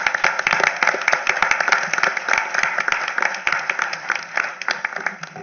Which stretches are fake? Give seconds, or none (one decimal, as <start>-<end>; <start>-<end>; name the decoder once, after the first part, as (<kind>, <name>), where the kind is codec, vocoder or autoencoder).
2.1-4.8 (vocoder, BigVGAN v2)